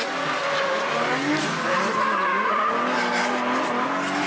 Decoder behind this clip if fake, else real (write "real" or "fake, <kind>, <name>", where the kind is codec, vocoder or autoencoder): real